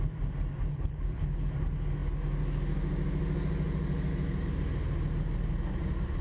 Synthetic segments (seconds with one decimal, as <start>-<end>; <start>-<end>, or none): 0.7-1.5